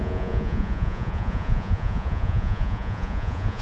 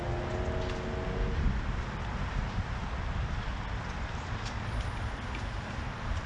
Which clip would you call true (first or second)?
second